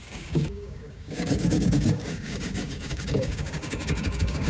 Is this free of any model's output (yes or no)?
no